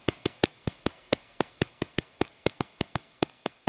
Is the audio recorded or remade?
remade